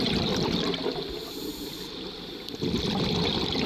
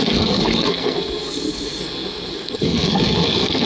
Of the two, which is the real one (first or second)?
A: first